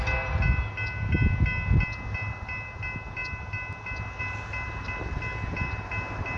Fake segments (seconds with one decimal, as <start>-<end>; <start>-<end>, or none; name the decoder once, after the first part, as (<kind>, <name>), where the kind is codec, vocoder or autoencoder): none